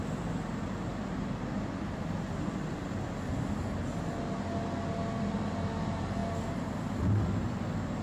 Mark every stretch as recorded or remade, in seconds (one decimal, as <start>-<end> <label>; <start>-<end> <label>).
0.0-0.9 recorded; 0.9-3.1 remade; 3.1-8.0 recorded